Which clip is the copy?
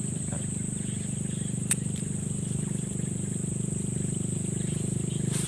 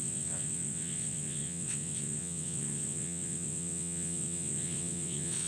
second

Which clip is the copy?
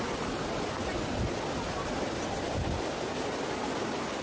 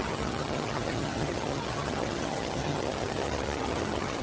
second